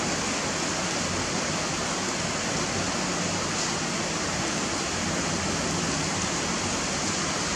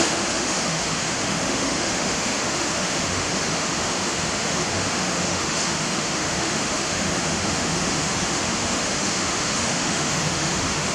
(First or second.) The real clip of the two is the first